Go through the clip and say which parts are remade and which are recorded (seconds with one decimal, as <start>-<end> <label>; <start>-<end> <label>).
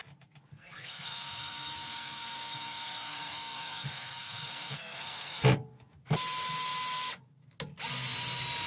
0.0-0.5 recorded; 0.5-5.4 remade; 5.4-8.7 recorded